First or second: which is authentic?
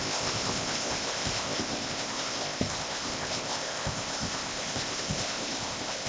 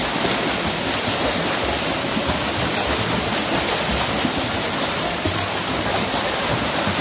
second